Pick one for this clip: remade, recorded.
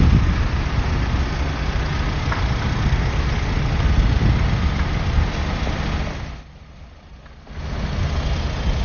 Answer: recorded